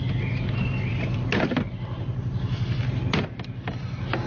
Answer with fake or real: real